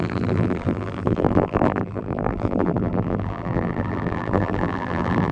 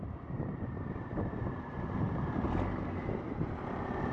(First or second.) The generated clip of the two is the first